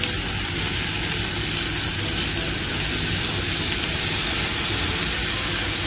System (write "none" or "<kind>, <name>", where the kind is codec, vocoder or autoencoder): none